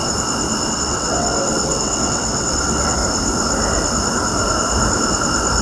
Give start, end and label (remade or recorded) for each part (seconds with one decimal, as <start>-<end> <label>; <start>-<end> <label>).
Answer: 0.0-0.7 recorded; 0.7-3.0 remade; 3.0-5.6 recorded